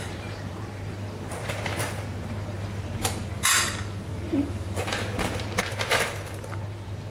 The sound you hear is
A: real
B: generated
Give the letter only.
B